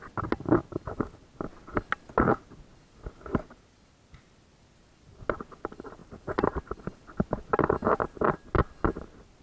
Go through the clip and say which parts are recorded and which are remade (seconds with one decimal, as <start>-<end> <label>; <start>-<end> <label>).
0.0-6.0 recorded; 6.0-6.6 remade; 6.6-9.4 recorded